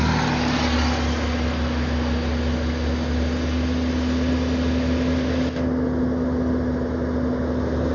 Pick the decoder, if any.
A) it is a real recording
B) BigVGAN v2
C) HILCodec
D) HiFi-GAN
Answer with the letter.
A